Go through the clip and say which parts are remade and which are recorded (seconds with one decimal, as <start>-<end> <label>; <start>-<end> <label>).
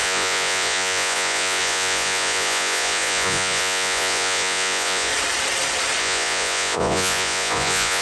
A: 0.0-5.1 remade; 5.1-6.0 recorded; 6.0-8.0 remade